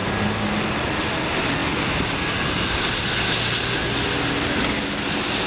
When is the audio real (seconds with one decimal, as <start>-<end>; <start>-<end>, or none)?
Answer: 0.0-5.5